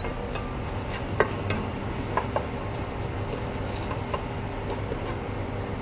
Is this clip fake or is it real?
real